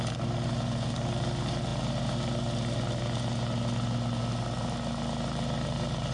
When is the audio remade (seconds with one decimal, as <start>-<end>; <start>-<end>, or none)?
none